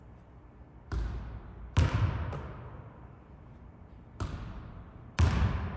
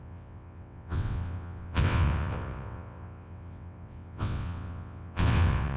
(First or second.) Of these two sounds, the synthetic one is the second